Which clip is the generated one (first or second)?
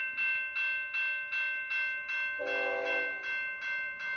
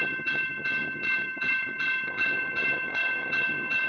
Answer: second